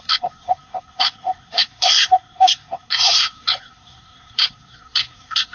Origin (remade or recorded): remade